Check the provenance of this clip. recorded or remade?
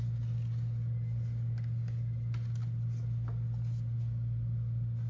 recorded